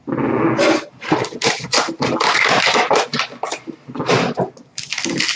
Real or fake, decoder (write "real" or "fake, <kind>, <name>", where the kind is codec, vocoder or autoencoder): real